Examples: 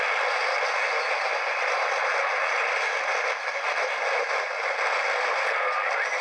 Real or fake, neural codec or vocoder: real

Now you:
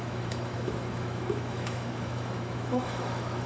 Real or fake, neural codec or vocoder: fake, autoencoder, DAC-VAE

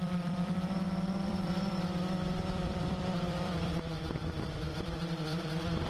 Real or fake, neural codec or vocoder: fake, vocoder, BigVGAN v2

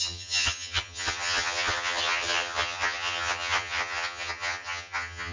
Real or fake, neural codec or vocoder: fake, vocoder, HiFi-GAN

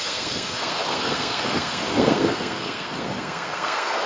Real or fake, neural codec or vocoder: fake, codec, SNAC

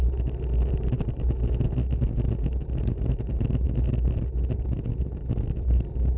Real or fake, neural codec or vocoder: real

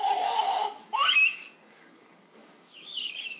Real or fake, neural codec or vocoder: fake, codec, DAC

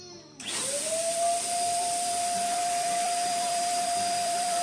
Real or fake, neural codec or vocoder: fake, vocoder, BigVGAN v2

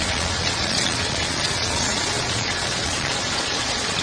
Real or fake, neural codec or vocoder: fake, vocoder, Vocos